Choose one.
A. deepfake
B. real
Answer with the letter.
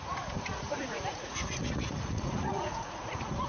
A